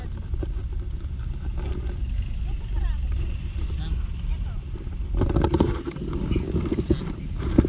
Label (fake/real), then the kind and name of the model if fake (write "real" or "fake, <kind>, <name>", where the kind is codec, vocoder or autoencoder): real